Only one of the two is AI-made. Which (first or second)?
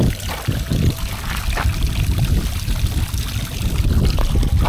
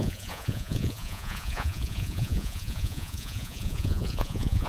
second